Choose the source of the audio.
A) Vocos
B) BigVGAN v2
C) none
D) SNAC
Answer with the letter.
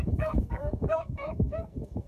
D